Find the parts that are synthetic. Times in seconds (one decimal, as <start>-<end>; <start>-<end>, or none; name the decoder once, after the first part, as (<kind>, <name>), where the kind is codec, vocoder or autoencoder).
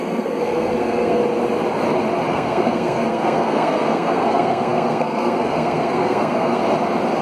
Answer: 0.0-1.2 (codec, SNAC); 2.3-6.6